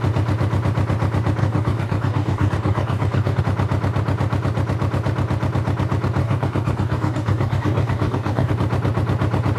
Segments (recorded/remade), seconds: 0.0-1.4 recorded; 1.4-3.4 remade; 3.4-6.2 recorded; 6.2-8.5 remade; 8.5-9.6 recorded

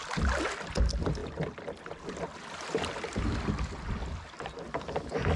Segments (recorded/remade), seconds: 0.0-5.4 recorded

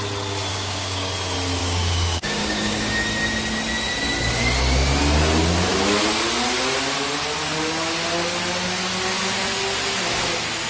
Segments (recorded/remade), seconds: 0.0-0.5 recorded; 0.5-1.1 remade; 1.1-1.6 recorded; 1.6-2.9 remade; 2.9-10.7 recorded

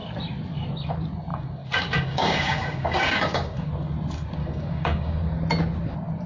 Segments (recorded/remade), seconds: 0.0-1.3 recorded; 1.3-3.7 remade; 3.7-4.4 recorded; 4.4-5.2 remade; 5.2-6.3 recorded